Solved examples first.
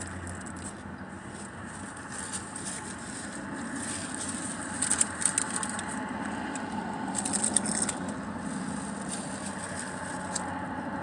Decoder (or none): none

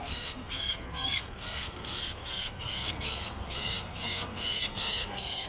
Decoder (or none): codec, SNAC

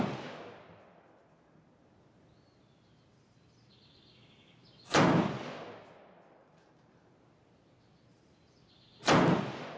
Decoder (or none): none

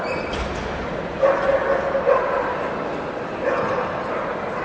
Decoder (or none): none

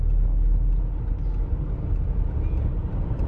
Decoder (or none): none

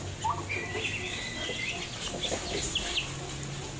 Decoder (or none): none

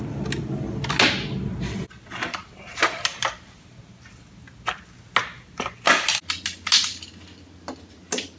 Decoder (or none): none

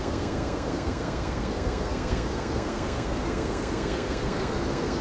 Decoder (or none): codec, SNAC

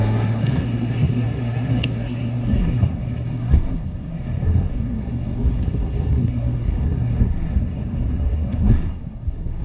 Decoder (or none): codec, SNAC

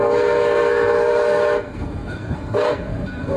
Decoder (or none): codec, SNAC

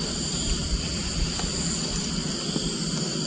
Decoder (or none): none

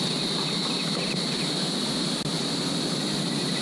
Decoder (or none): none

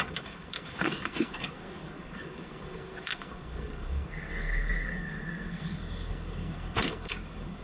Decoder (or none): codec, SNAC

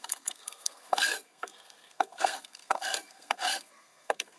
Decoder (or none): codec, SNAC